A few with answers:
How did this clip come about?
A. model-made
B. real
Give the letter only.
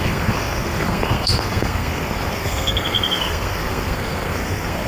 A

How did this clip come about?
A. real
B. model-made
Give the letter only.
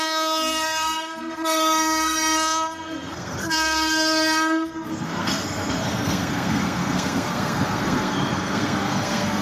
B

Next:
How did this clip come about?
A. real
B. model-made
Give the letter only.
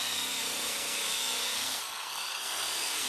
B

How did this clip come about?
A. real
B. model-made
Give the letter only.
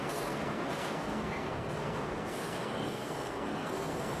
B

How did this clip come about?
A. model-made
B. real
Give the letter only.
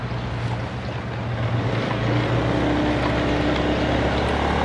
B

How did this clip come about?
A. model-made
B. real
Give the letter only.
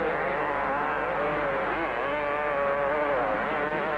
B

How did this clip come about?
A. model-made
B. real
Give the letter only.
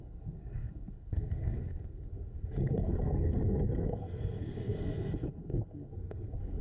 A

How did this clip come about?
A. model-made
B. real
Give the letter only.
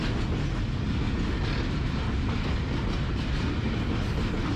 B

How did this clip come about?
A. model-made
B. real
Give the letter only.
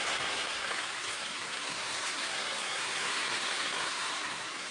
A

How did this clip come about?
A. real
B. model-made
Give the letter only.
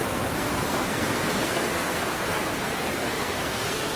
B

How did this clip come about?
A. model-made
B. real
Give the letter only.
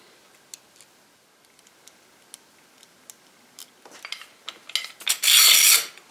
B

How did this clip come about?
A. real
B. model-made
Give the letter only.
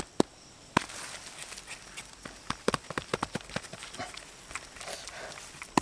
A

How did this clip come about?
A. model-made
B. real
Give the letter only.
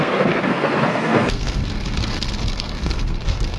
A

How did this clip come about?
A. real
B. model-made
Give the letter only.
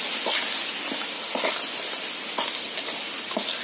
A